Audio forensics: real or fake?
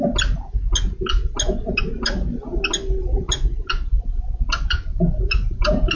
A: real